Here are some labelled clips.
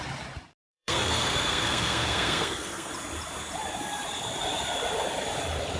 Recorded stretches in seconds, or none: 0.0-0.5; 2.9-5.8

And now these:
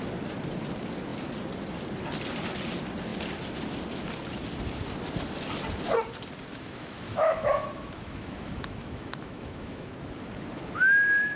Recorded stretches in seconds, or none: 0.0-6.5; 9.8-11.4